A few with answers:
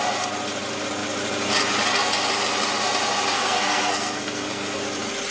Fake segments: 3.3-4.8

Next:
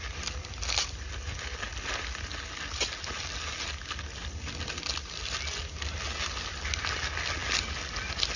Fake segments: none

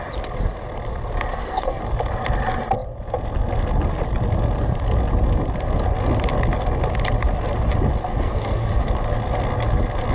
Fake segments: 1.3-1.8; 8.1-8.9

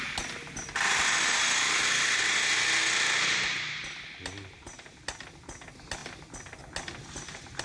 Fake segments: none

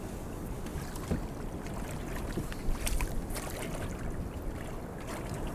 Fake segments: none

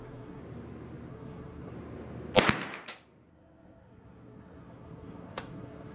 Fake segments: 0.0-0.4; 1.1-1.7; 3.3-5.9